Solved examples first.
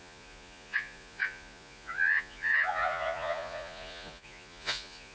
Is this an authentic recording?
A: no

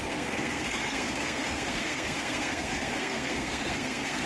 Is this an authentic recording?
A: no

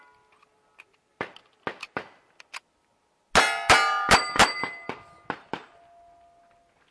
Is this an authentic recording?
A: yes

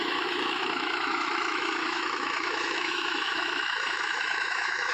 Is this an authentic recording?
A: no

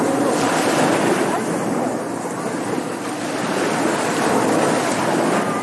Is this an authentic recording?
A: yes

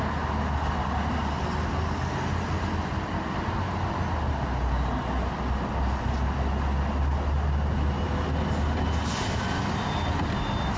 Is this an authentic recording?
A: yes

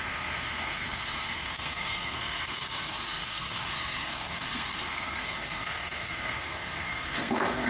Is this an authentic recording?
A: no